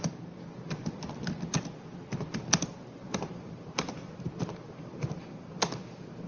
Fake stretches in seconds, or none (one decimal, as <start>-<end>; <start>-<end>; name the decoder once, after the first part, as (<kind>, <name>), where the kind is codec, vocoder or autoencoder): 0.0-0.8 (vocoder, BigVGAN v2); 2.7-6.3

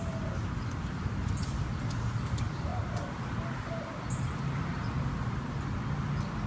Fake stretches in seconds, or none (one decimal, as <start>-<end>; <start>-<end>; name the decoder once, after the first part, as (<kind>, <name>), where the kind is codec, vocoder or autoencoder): 2.7-3.7 (vocoder, BigVGAN v2)

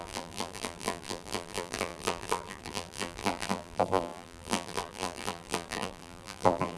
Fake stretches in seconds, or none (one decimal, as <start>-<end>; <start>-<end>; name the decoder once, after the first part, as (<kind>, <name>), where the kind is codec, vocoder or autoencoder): 0.0-6.8 (vocoder, BigVGAN v2)